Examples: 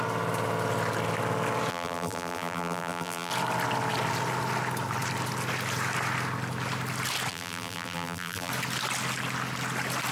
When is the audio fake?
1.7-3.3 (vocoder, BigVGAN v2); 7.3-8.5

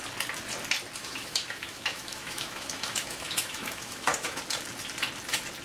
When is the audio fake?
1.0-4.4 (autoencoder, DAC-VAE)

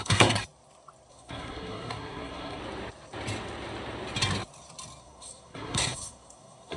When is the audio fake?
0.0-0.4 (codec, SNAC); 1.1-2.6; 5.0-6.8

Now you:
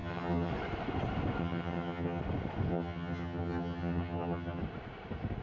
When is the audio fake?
0.0-0.5 (vocoder, HiFi-GAN); 1.4-2.2; 2.7-4.6